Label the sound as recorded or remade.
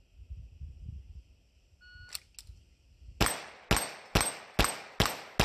recorded